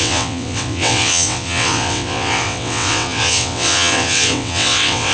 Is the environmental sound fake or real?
fake